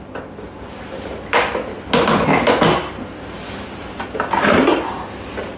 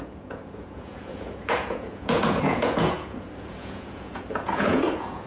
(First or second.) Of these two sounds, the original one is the first